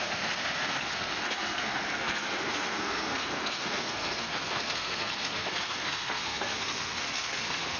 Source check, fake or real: fake